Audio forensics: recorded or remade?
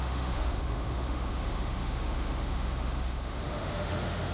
remade